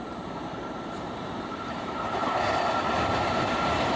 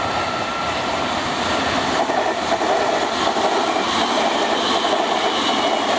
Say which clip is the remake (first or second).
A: first